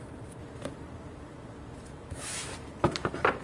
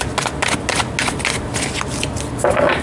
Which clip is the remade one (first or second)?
first